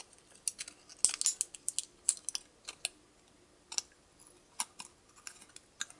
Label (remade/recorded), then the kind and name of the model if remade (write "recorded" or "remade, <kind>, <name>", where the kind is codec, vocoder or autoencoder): recorded